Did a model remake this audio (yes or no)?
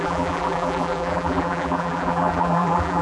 yes